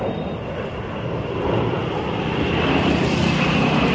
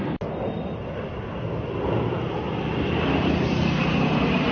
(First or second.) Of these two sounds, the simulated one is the first